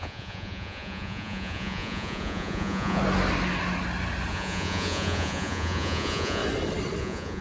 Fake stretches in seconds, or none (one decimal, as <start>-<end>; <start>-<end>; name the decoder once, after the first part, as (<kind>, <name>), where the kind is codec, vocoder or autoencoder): 0.0-3.0 (vocoder, Vocos); 4.3-6.4; 7.0-7.4